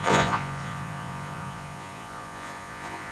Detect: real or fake fake